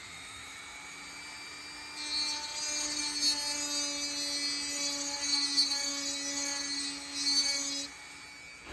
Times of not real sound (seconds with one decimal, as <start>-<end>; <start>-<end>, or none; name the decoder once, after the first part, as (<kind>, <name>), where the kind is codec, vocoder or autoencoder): 0.0-0.6 (autoencoder, DAC-VAE)